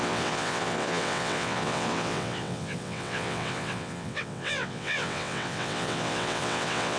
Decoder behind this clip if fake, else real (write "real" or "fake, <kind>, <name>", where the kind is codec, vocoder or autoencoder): fake, vocoder, WaveNeXt